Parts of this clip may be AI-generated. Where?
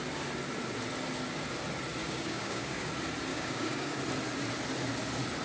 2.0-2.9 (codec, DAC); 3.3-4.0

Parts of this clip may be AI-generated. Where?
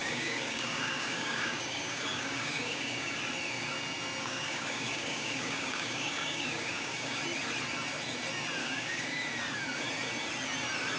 0.0-3.1 (codec, DAC); 4.2-7.2; 8.6-9.3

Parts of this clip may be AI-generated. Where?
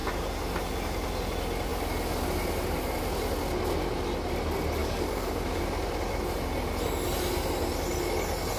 4.8-5.6 (codec, DAC)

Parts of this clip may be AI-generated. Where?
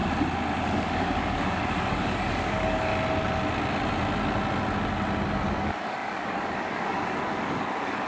0.6-2.9 (codec, DAC); 5.3-8.1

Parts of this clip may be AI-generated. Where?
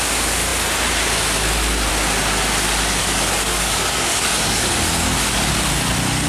3.0-5.5 (codec, DAC)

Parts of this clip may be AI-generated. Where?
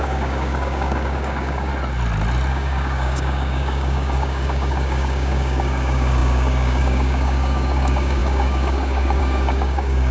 0.0-1.7 (codec, DAC); 2.5-10.1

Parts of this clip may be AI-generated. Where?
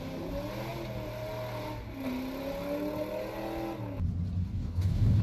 4.4-5.2 (codec, DAC)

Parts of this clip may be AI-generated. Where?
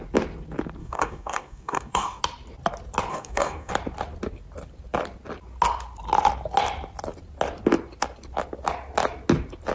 0.8-2.2 (codec, DAC); 3.1-3.7